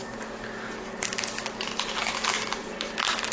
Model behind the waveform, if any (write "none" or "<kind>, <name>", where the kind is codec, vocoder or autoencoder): none